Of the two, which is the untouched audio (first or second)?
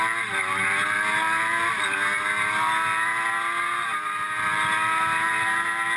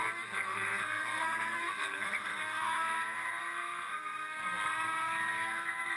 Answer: first